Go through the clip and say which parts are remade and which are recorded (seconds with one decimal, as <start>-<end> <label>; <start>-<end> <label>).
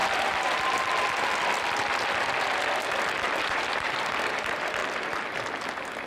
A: 0.0-3.4 recorded; 3.4-4.8 remade; 4.8-6.1 recorded